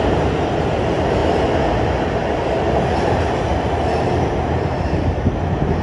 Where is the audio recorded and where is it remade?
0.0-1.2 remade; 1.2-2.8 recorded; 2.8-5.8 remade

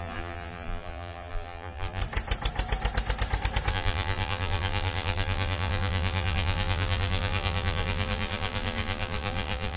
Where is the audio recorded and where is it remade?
0.0-2.0 remade; 2.0-3.7 recorded; 3.7-9.8 remade

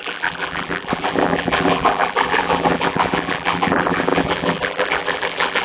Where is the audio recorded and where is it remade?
0.0-5.6 remade

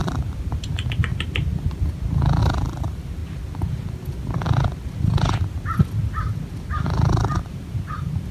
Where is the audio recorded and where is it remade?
0.0-1.1 remade; 1.1-2.4 recorded; 2.4-3.2 remade; 3.2-7.4 recorded; 7.4-8.3 remade